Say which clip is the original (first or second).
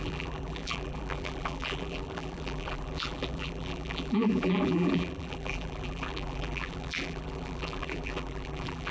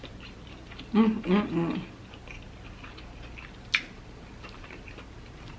second